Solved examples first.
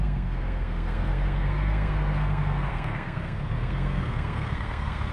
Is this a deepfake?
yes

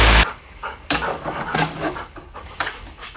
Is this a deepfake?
yes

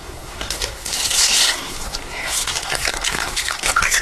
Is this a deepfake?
yes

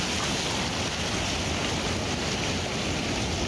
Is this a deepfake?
no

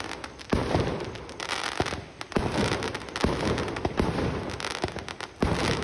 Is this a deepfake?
no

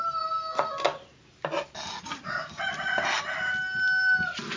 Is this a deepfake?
no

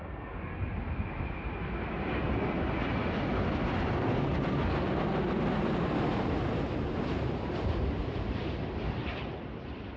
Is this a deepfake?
no